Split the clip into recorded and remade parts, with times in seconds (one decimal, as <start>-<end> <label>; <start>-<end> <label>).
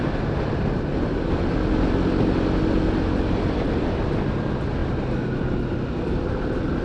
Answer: 0.0-6.8 recorded